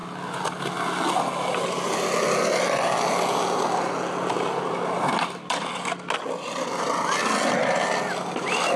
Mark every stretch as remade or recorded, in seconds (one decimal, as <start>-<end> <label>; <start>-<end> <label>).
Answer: 0.0-8.8 recorded